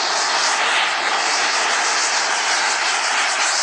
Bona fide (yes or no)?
yes